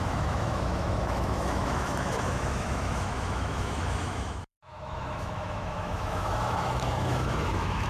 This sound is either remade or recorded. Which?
remade